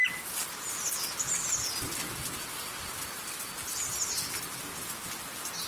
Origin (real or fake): real